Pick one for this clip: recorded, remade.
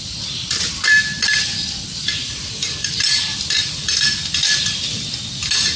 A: remade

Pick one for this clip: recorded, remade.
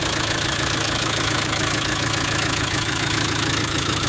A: remade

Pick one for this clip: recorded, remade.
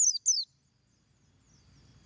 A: recorded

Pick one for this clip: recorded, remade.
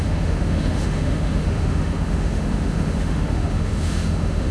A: remade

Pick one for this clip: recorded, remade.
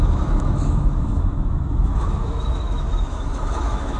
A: remade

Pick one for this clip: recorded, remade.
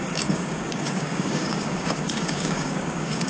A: remade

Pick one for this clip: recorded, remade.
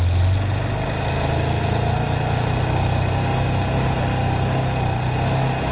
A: recorded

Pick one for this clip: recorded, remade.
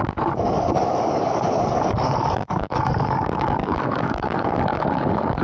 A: remade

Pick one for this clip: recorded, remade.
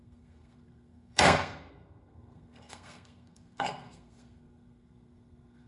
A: remade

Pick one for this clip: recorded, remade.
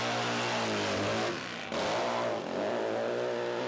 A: recorded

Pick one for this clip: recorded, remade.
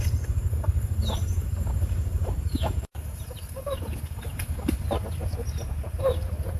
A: remade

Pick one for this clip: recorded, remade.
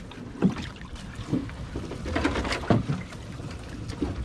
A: remade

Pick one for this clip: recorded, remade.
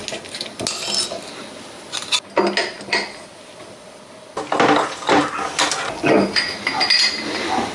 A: recorded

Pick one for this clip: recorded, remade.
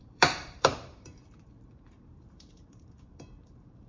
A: remade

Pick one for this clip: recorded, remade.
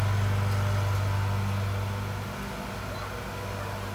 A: recorded